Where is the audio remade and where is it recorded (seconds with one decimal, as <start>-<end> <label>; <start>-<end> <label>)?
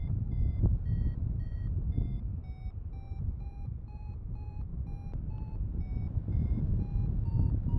0.0-2.3 remade; 2.3-3.3 recorded; 3.3-4.7 remade; 4.7-5.3 recorded; 5.3-7.8 remade